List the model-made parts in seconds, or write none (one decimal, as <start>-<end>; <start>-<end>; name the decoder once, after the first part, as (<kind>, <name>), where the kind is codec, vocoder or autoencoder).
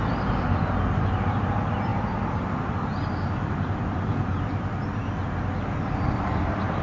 none